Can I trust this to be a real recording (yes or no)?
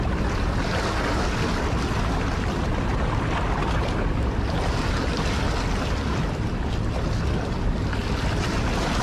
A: yes